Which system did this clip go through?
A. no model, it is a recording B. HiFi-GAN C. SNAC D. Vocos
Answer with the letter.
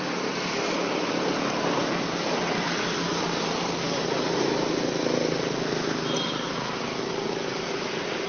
A